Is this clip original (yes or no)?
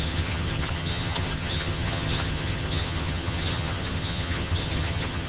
no